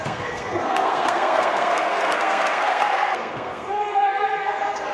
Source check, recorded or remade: remade